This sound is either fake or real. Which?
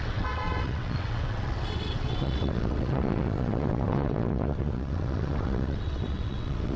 fake